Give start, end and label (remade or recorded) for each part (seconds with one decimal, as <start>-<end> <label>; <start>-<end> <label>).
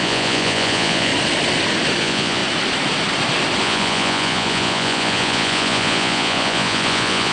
0.0-1.1 remade; 1.1-2.0 recorded; 2.0-2.4 remade; 2.4-3.6 recorded; 3.6-7.3 remade